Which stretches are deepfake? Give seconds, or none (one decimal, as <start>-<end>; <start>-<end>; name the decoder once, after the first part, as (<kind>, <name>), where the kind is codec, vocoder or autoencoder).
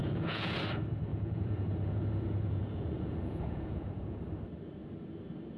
0.0-0.6 (vocoder, Vocos); 1.1-4.2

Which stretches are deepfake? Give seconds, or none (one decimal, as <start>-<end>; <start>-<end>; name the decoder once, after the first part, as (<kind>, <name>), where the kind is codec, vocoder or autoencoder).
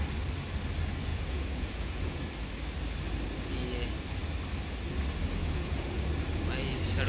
1.1-2.2 (vocoder, Vocos); 5.4-6.0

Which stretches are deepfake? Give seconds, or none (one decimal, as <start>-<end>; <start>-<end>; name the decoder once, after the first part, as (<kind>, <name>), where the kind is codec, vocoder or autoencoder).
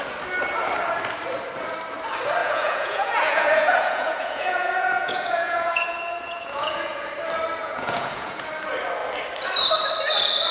2.4-7.1 (vocoder, Vocos); 7.6-8.5